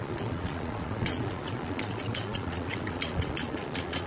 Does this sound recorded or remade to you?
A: remade